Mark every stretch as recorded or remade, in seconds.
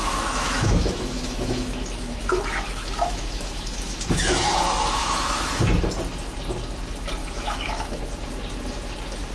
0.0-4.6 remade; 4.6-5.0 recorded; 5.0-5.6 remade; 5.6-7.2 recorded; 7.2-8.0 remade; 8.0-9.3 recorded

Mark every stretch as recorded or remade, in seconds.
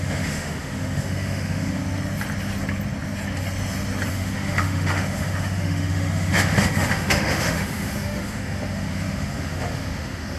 0.0-1.8 remade; 1.8-4.1 recorded; 4.1-10.4 remade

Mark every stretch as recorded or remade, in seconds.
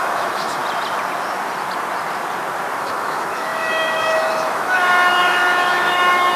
0.0-0.6 remade; 0.6-2.8 recorded; 2.8-6.4 remade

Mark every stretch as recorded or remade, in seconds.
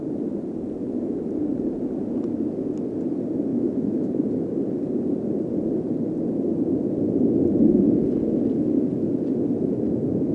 0.0-3.5 recorded; 3.5-4.1 remade; 4.1-10.3 recorded